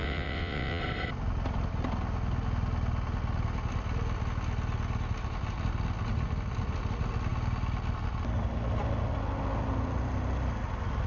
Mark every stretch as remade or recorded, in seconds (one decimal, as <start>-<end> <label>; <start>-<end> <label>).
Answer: 0.0-0.8 remade; 0.8-11.1 recorded